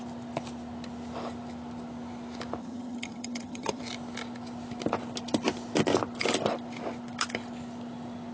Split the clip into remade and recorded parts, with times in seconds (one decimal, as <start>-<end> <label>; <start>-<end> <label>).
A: 0.0-2.6 recorded; 2.6-3.8 remade; 3.8-8.3 recorded